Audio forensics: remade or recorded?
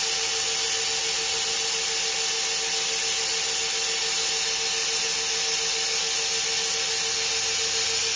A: recorded